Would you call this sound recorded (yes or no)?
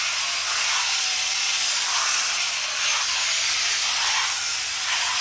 yes